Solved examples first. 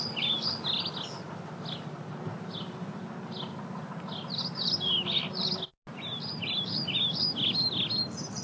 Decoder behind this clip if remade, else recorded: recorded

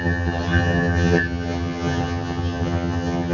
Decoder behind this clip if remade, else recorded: remade, vocoder, HiFi-GAN